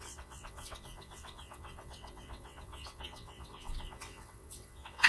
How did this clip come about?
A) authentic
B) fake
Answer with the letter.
B